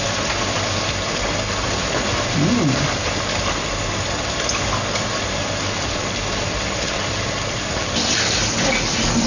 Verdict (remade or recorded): recorded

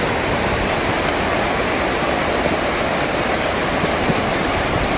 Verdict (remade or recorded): remade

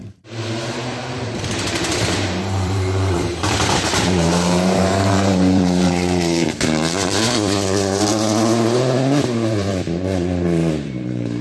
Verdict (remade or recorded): remade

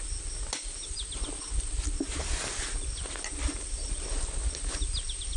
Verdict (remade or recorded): recorded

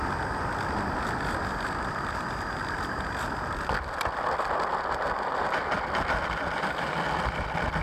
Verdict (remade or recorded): recorded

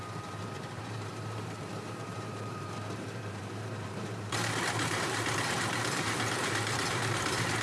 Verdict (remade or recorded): remade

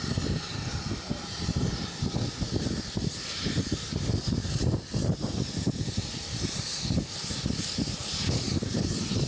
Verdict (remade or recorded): remade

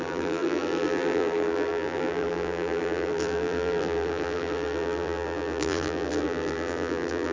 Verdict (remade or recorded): remade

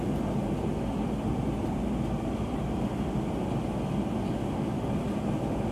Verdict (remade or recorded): recorded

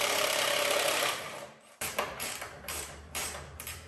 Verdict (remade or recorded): remade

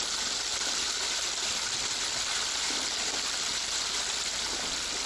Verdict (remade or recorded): recorded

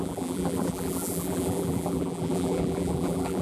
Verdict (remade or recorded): remade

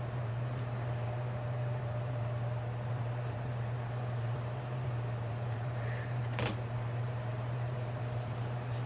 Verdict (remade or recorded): remade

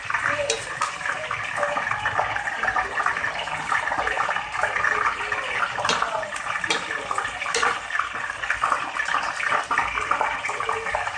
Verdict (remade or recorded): recorded